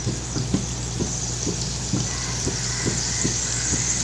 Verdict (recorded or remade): recorded